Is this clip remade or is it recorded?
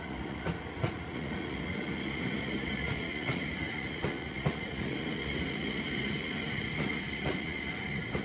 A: remade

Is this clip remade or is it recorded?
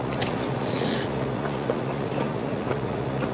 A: remade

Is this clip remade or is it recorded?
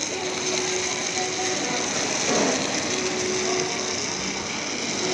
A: recorded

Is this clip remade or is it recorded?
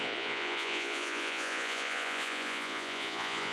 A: remade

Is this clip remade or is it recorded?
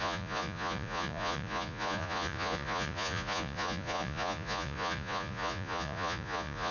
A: remade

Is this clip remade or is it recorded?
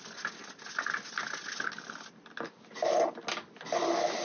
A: recorded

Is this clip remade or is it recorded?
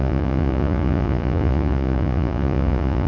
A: remade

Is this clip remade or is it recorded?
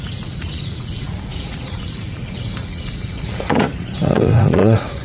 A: remade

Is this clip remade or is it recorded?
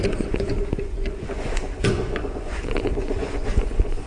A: remade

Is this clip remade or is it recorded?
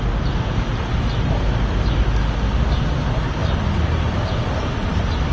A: recorded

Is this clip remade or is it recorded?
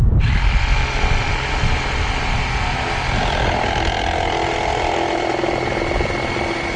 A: recorded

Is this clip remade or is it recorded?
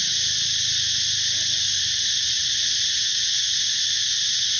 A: recorded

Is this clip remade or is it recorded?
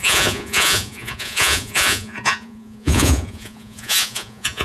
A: remade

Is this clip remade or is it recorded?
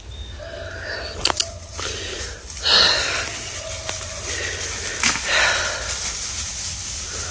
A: recorded